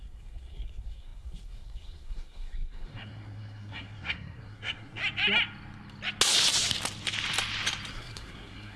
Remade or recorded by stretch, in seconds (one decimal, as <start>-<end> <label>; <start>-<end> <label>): 0.0-5.0 remade; 5.0-7.9 recorded; 7.9-8.8 remade